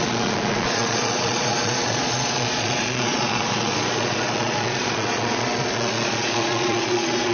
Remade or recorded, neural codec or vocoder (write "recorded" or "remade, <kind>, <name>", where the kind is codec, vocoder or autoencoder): remade, vocoder, Vocos